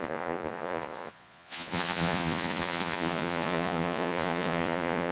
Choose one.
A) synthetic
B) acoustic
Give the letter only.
A